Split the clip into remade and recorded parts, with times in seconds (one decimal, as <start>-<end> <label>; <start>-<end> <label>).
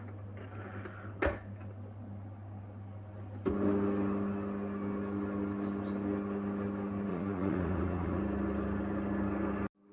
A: 0.0-7.1 recorded; 7.1-8.2 remade; 8.2-9.9 recorded